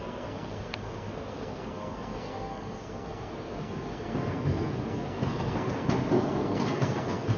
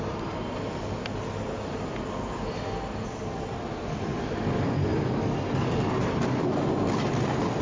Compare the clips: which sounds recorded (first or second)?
second